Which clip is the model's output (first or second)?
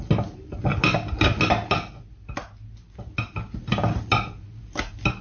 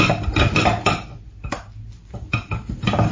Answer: second